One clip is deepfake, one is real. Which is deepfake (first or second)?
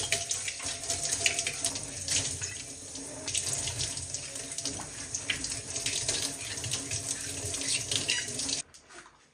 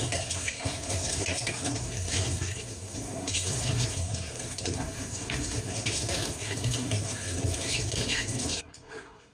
second